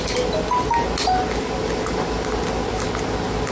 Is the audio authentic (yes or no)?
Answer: yes